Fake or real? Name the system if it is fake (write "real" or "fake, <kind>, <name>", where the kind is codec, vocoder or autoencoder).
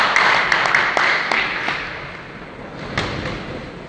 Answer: real